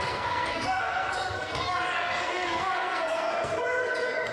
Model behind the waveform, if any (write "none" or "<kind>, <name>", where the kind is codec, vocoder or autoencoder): codec, SNAC